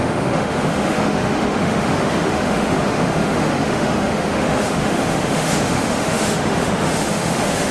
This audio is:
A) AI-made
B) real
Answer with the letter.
A